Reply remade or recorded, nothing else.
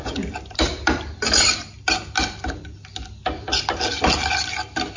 recorded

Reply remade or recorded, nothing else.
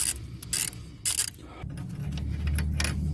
recorded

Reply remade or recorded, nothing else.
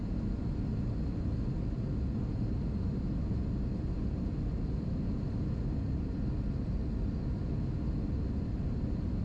recorded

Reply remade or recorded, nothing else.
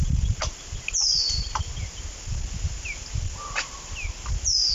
recorded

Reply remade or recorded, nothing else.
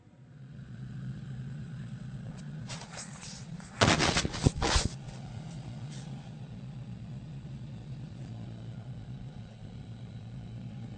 remade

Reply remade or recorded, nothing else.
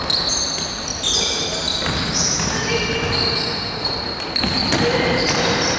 recorded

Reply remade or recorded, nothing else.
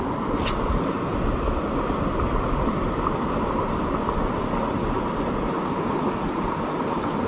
recorded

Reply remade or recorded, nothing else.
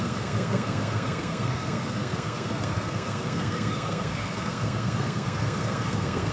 remade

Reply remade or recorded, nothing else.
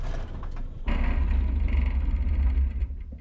recorded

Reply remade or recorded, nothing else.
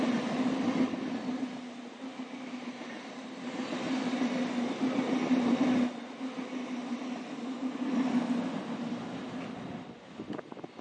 recorded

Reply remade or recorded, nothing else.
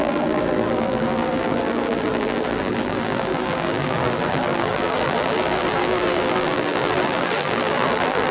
remade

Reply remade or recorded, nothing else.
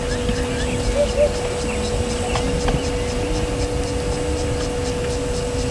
recorded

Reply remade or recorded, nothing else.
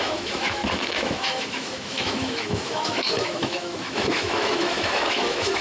remade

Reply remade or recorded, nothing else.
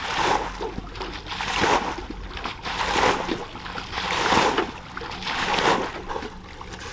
recorded